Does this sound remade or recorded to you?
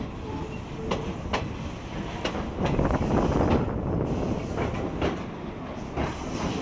recorded